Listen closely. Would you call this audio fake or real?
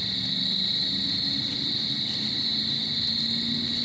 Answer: real